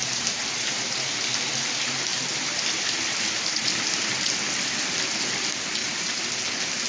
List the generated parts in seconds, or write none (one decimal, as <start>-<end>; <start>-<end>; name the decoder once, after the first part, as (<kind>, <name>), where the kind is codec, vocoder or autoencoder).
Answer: 0.0-1.2 (vocoder, BigVGAN v2); 2.1-2.6; 5.8-6.4